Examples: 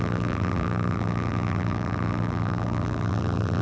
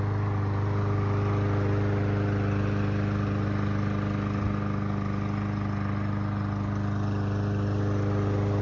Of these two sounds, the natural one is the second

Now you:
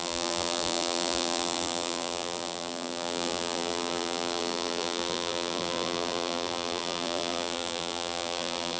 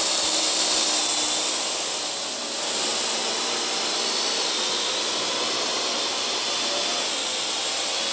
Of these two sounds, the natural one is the second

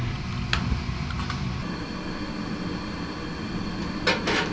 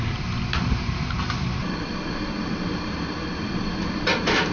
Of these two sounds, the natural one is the first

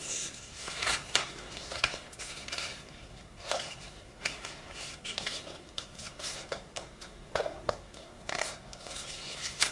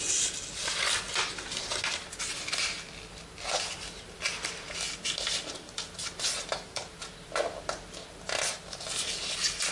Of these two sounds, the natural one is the second